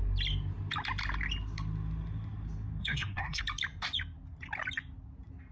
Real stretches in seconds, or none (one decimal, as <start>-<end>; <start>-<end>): 0.0-2.8; 3.4-5.5

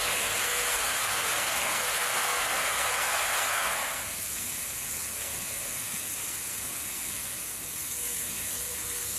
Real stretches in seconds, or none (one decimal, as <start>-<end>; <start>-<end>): none

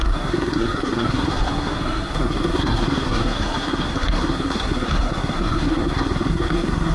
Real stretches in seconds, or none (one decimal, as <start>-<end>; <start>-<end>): none

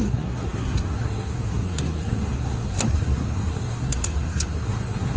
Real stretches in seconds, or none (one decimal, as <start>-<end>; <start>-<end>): none

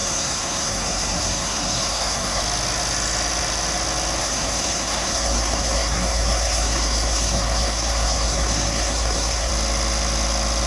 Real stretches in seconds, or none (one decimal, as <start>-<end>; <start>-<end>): 2.4-4.2; 9.5-10.7